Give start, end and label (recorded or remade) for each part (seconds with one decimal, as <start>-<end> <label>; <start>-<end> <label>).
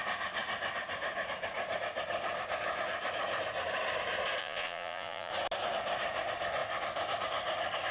0.0-4.4 recorded; 4.4-5.3 remade; 5.3-7.9 recorded